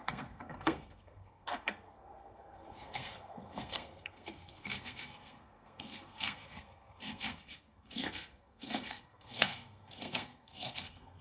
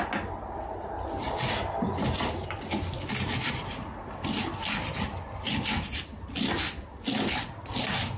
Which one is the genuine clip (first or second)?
second